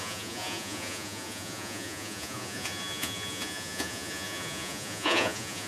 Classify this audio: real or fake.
fake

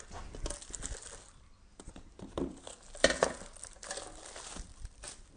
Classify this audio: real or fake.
real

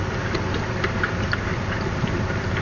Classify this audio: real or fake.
real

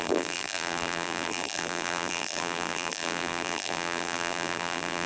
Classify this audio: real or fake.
fake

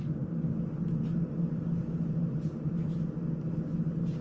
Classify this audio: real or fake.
real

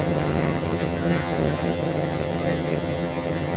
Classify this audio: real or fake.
fake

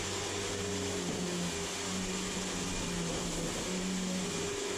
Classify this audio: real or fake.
real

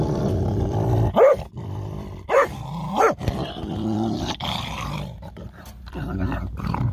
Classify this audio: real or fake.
fake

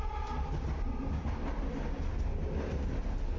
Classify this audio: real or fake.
real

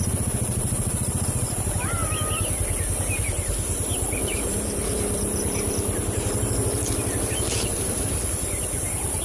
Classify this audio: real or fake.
fake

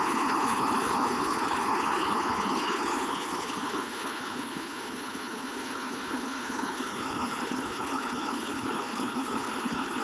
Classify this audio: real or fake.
fake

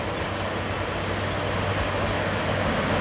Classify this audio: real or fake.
real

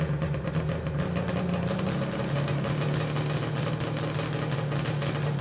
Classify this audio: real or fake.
real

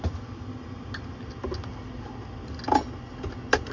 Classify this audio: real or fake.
real